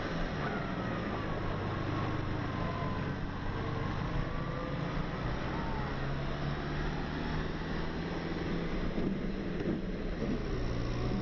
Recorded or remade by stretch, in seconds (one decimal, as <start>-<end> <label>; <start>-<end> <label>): 0.0-11.2 recorded